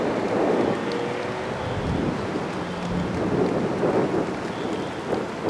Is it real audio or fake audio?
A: real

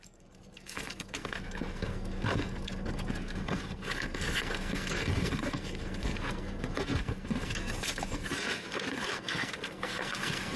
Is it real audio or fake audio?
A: fake